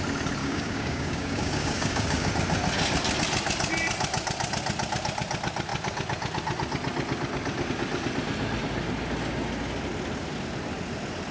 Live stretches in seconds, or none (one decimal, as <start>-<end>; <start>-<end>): 0.0-0.4; 2.3-11.3